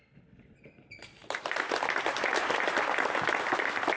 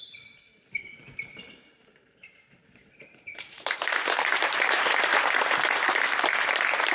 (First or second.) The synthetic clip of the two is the second